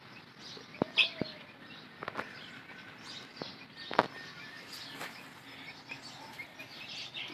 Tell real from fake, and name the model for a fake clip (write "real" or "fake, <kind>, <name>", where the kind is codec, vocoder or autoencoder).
real